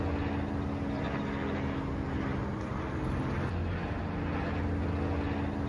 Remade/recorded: recorded